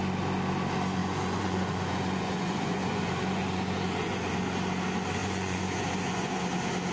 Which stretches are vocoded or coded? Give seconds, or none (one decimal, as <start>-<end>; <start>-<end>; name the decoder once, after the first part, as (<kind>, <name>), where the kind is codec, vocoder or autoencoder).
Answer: 1.0-4.3 (vocoder, Vocos); 5.2-6.4